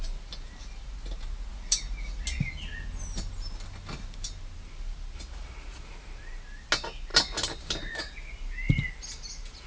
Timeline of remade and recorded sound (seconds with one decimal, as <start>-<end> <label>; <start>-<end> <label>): 0.0-9.7 recorded